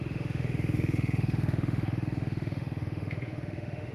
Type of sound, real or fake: fake